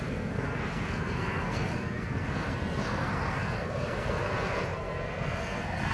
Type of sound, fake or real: fake